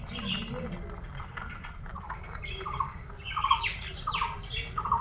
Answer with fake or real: real